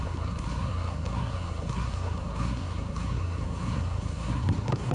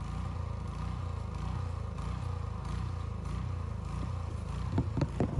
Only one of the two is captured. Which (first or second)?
second